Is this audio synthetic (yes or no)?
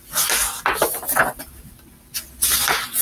no